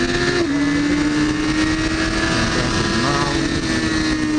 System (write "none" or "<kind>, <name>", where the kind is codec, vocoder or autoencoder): none